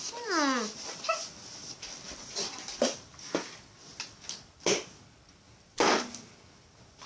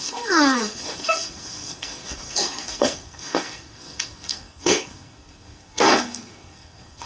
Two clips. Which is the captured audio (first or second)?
first